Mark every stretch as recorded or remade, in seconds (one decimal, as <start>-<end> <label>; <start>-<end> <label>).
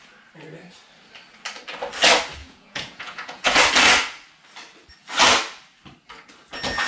0.0-2.4 recorded; 2.4-3.6 remade; 3.6-6.9 recorded